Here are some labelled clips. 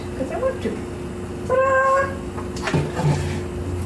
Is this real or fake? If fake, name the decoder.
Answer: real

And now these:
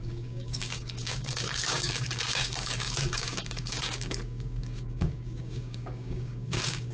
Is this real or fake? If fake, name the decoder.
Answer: fake, codec, DAC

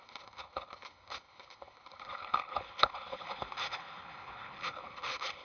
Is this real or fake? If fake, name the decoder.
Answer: fake, codec, HILCodec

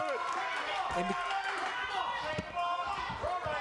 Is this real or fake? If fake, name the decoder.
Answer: real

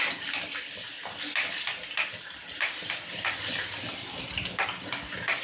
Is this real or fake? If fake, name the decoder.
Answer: real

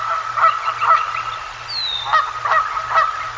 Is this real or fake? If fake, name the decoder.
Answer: real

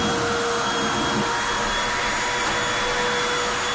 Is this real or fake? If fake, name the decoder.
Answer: real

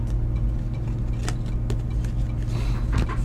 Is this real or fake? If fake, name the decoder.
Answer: real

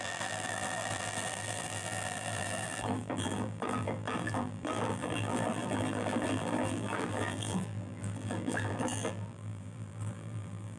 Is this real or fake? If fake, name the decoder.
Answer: fake, vocoder, BigVGAN v2